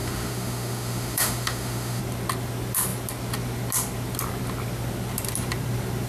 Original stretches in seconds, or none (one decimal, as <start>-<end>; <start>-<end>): 2.0-6.1